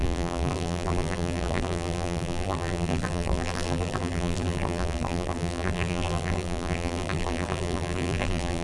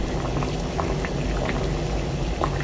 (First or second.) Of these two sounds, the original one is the second